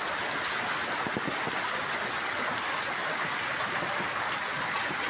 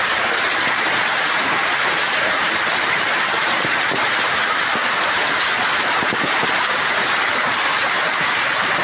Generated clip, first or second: second